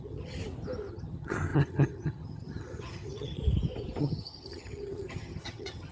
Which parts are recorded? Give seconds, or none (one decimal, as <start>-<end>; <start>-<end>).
0.4-0.9; 3.4-4.0